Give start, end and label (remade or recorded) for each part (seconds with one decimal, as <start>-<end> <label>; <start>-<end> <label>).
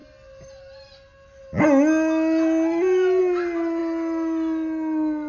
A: 0.0-5.3 recorded